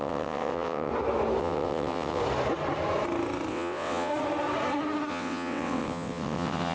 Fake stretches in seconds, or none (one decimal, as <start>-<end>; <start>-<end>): 0.0-0.9; 1.4-2.2; 3.5-4.1; 5.1-6.7

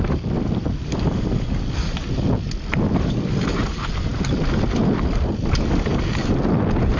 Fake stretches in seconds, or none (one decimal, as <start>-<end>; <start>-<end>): none